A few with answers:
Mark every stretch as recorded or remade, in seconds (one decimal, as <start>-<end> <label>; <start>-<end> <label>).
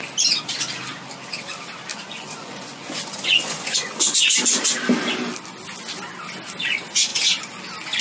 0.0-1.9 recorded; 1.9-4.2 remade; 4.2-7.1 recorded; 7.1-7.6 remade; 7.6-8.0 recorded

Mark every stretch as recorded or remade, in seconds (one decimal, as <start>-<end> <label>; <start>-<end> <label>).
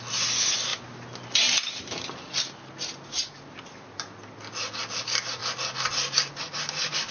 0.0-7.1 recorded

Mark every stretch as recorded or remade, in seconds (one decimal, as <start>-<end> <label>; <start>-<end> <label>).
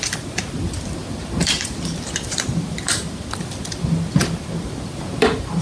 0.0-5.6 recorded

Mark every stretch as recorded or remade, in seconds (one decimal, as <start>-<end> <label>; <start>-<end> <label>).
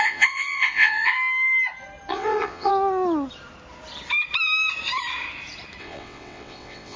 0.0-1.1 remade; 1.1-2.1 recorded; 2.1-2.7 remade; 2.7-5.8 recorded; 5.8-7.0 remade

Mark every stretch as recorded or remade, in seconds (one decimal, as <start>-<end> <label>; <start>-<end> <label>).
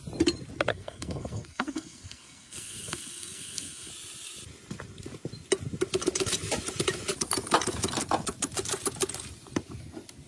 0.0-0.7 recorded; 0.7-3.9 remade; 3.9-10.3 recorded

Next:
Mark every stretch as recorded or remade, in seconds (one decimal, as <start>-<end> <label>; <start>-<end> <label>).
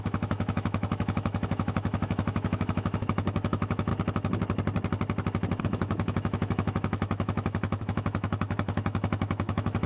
0.0-3.9 remade; 3.9-5.6 recorded; 5.6-9.9 remade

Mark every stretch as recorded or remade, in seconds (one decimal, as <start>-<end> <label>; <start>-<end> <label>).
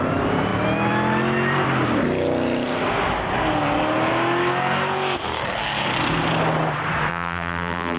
0.0-7.1 recorded; 7.1-8.0 remade